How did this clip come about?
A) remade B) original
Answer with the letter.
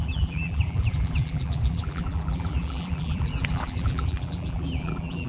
A